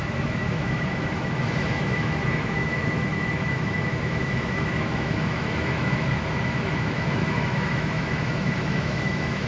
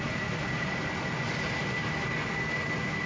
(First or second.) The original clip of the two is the second